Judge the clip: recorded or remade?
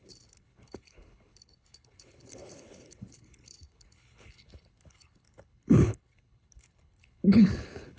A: remade